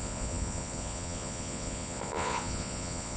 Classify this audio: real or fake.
fake